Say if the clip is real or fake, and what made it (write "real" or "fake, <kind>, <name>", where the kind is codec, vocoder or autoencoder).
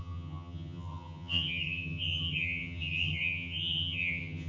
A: fake, vocoder, HiFi-GAN